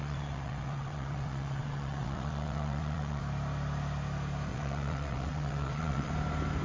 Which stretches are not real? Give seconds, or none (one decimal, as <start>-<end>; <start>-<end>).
0.0-3.2; 4.5-6.1